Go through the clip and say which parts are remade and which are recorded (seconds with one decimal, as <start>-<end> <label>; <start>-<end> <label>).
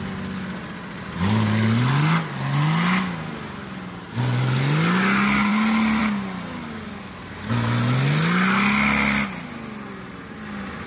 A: 0.0-10.9 recorded